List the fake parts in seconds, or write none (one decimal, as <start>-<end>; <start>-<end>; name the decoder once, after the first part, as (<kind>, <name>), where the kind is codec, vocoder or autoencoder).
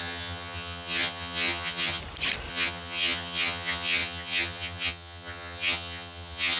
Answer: 0.0-2.0 (vocoder, HiFi-GAN); 2.5-6.6